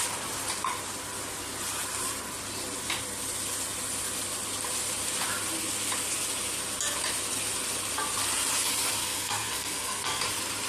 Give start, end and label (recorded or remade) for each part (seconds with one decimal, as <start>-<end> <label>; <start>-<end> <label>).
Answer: 0.0-9.0 recorded; 9.0-10.2 remade; 10.2-10.7 recorded